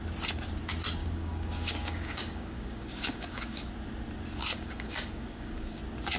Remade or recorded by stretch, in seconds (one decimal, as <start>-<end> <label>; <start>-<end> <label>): 0.0-1.0 recorded; 1.0-3.7 remade; 3.7-4.4 recorded; 4.4-5.8 remade; 5.8-6.2 recorded